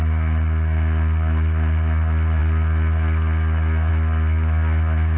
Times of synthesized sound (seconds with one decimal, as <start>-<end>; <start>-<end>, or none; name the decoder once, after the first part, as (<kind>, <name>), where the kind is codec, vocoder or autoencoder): none